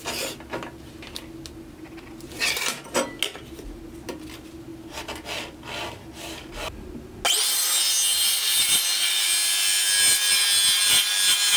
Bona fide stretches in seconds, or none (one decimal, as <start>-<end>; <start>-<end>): 0.0-11.6